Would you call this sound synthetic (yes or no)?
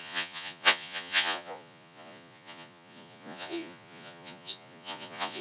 yes